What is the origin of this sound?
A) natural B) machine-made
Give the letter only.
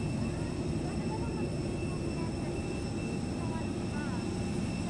A